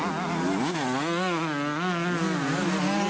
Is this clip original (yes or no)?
yes